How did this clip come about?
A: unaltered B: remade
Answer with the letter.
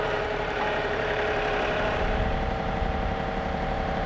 B